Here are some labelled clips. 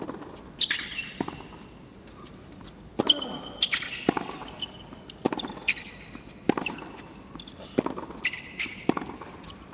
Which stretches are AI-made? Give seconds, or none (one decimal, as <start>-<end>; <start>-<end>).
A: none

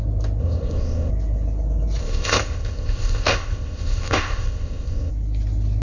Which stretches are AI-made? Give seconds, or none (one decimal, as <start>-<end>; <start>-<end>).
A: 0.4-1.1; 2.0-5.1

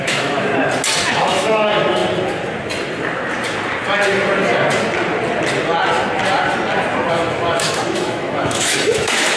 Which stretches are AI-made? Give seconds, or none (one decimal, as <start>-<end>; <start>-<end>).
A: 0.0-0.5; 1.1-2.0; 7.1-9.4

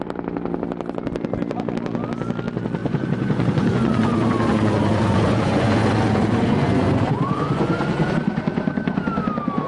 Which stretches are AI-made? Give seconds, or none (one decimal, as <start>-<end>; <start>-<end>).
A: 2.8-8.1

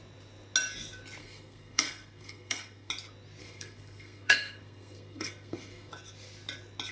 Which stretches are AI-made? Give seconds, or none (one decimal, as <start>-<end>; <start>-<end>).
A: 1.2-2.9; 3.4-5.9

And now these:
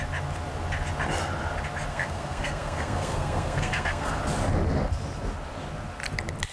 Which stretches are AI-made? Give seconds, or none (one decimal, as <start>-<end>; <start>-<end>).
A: 1.9-4.2

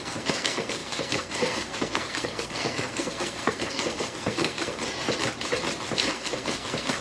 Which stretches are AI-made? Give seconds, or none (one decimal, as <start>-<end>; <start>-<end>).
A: 0.0-4.8; 6.1-7.0